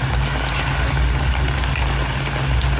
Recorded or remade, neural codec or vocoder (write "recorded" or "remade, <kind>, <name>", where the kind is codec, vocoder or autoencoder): recorded